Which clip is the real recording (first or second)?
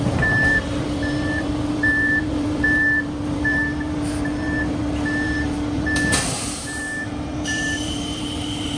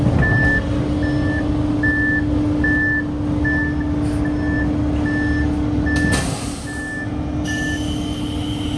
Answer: second